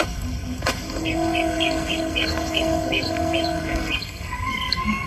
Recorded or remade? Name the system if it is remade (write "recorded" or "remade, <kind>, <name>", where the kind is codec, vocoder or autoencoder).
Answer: remade, codec, SNAC